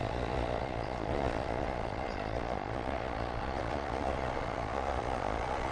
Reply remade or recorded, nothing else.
remade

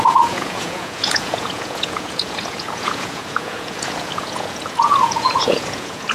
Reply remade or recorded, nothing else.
remade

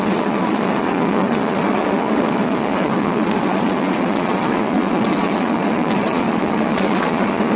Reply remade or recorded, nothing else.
remade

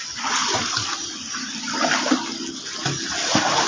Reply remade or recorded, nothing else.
recorded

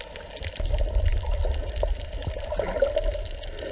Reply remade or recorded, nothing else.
recorded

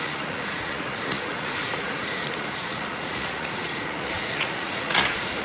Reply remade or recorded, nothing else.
remade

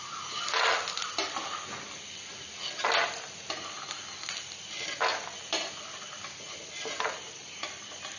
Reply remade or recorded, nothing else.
recorded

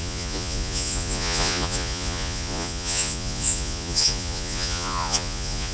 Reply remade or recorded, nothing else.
remade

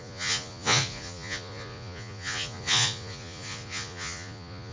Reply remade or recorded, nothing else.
remade